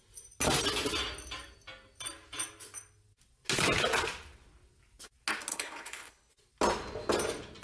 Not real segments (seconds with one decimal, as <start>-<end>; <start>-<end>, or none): 5.5-6.3